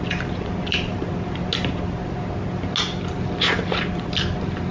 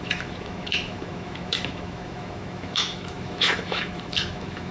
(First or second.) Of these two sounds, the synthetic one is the second